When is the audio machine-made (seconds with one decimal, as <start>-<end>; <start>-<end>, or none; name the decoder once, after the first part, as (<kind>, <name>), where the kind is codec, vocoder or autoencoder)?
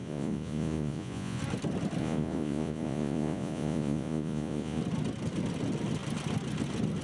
0.0-1.4 (vocoder, Vocos); 2.0-4.8